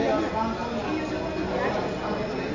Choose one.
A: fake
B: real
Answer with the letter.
B